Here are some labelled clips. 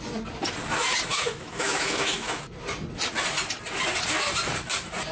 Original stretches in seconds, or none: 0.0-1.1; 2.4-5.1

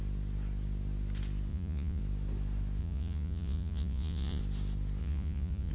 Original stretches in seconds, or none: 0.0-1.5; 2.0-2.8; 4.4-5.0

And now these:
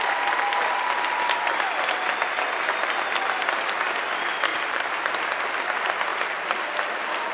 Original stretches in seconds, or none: 0.0-4.5; 5.1-7.3